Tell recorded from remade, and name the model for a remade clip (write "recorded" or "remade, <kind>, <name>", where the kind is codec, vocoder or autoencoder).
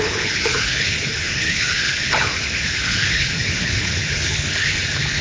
remade, codec, HILCodec